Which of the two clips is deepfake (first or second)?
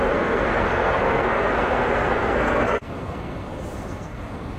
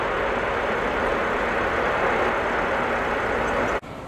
first